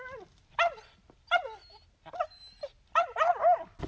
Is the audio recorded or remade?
recorded